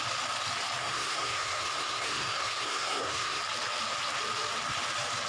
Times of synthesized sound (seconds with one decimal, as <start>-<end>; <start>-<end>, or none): 0.8-3.4